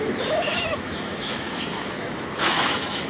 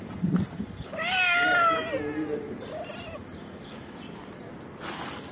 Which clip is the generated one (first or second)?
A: first